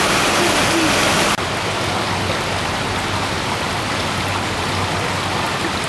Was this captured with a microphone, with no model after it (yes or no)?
yes